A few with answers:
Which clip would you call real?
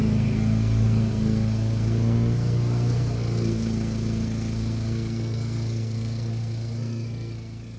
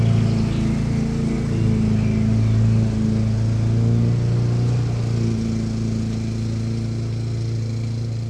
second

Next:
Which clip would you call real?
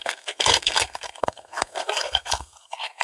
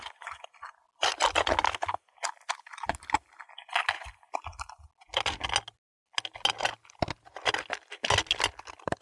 second